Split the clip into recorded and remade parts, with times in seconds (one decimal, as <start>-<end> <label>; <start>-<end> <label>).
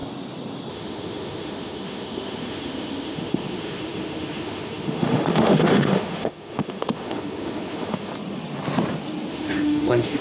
0.0-0.7 recorded; 0.7-8.1 remade; 8.1-9.3 recorded; 9.3-10.2 remade